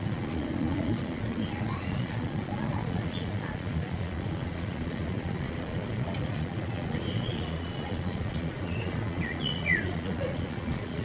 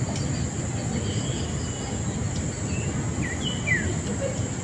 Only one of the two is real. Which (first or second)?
second